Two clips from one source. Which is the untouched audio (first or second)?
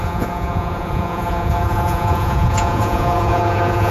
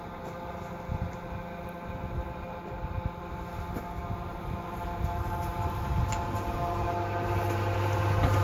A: second